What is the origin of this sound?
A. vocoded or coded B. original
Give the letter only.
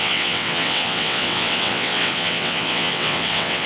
A